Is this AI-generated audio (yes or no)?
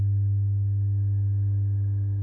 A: no